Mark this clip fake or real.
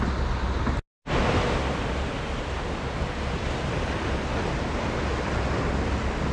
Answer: real